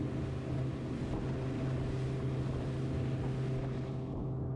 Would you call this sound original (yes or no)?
yes